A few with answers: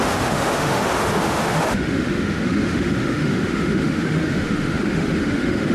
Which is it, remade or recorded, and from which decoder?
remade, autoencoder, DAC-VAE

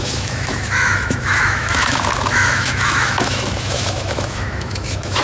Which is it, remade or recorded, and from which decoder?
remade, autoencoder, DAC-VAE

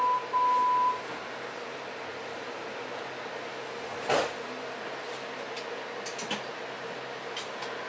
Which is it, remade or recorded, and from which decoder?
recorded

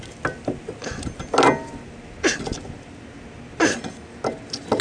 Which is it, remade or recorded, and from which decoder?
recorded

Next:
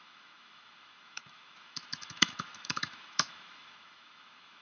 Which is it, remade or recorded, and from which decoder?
remade, autoencoder, DAC-VAE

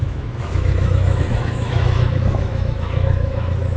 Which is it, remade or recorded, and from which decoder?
remade, autoencoder, DAC-VAE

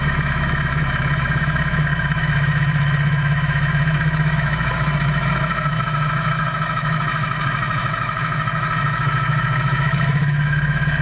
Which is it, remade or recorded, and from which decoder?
remade, autoencoder, DAC-VAE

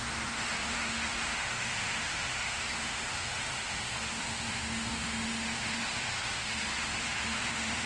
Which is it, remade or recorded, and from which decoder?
remade, autoencoder, DAC-VAE